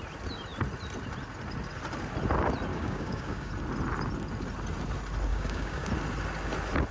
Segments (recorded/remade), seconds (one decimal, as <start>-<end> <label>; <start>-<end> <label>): 0.0-2.7 recorded; 2.7-3.5 remade; 3.5-5.3 recorded; 5.3-5.9 remade; 5.9-6.9 recorded